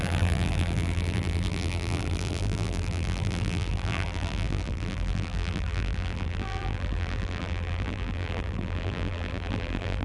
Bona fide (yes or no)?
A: no